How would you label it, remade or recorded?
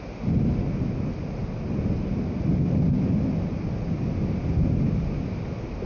recorded